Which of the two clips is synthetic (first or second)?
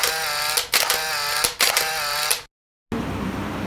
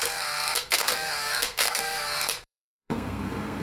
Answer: second